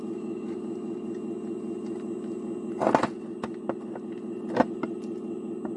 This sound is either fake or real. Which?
real